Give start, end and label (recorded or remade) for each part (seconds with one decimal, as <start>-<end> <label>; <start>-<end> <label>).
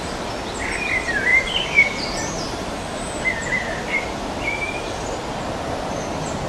0.0-1.3 recorded; 1.3-5.2 remade; 5.2-6.5 recorded